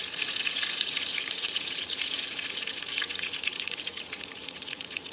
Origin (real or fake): fake